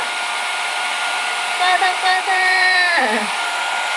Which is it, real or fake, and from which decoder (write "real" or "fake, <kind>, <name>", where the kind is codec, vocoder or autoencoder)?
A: fake, vocoder, BigVGAN v2